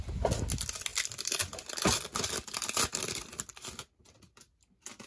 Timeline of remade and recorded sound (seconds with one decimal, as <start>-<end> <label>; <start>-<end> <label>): 0.0-5.1 recorded